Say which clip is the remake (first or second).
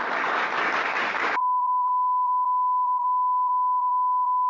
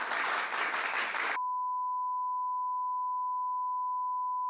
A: first